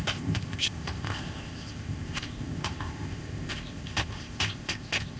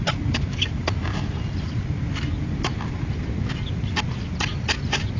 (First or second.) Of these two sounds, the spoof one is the first